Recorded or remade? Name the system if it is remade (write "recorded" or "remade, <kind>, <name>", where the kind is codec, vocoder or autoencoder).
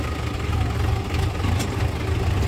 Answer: recorded